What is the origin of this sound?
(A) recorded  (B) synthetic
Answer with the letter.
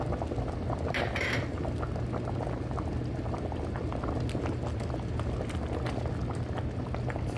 A